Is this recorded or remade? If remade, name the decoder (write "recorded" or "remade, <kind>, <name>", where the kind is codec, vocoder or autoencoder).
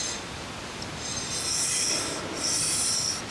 recorded